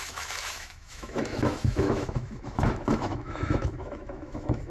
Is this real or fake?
fake